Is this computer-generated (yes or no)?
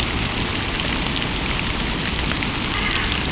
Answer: no